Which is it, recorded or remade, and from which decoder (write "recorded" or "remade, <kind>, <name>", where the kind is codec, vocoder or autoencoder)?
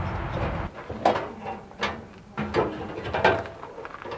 recorded